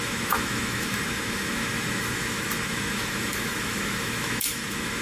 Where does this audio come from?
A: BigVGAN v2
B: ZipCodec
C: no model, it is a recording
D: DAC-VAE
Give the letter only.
D